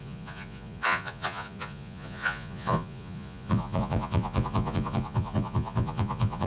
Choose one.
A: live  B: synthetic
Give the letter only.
B